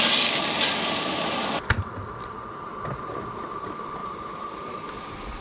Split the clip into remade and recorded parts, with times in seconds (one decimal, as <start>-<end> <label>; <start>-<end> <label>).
0.0-4.0 recorded; 4.0-4.9 remade; 4.9-5.4 recorded